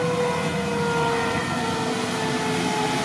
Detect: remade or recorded recorded